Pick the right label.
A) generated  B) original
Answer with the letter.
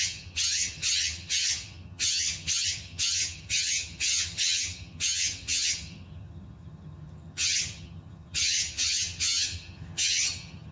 A